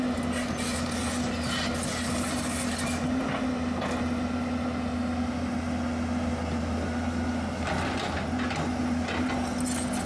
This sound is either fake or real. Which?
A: real